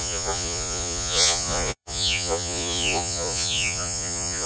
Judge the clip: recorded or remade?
remade